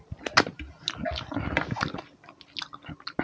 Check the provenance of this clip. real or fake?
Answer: real